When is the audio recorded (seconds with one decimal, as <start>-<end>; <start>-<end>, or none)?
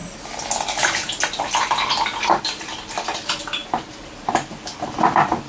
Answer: 0.0-5.5